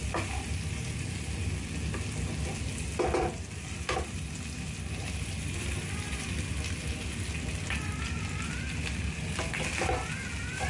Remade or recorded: recorded